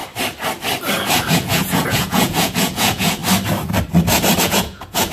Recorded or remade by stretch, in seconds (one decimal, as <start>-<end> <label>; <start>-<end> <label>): 0.0-1.3 recorded; 1.3-3.2 remade; 3.2-4.4 recorded; 4.4-5.1 remade